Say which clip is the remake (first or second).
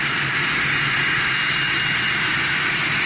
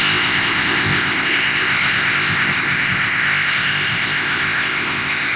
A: second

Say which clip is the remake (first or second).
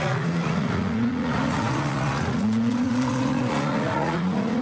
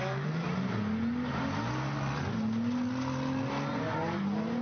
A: first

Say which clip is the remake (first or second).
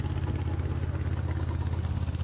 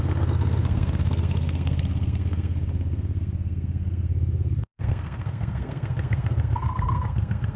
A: second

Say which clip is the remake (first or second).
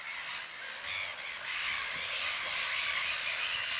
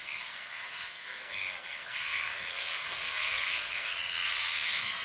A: second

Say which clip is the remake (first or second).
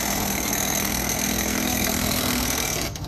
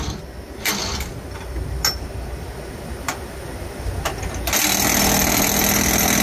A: first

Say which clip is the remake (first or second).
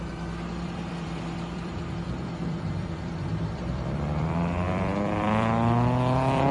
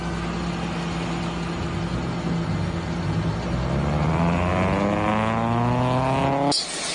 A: first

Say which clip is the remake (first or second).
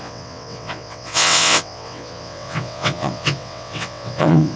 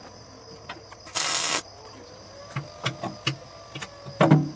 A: first